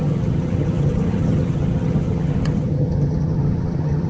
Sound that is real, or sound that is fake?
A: fake